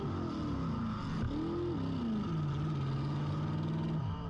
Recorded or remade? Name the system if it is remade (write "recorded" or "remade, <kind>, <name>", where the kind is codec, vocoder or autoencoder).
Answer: recorded